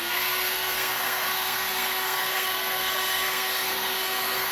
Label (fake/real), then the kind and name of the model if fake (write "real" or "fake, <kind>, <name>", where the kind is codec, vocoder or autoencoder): fake, codec, SNAC